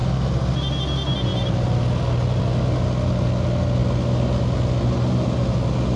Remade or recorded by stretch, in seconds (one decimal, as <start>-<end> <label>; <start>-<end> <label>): 0.0-6.0 recorded